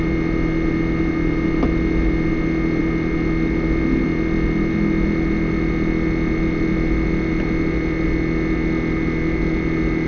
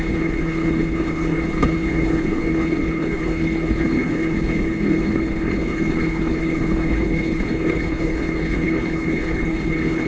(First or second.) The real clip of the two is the first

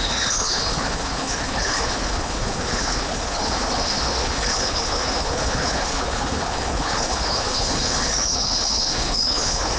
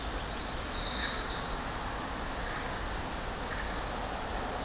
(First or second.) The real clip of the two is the second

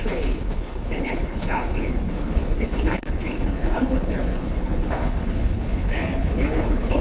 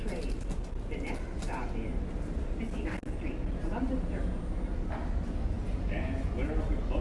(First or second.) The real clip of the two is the second